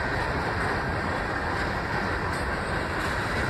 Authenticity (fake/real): real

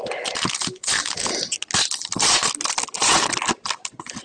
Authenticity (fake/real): real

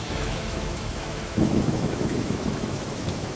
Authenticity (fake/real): fake